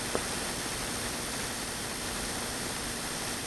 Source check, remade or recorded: recorded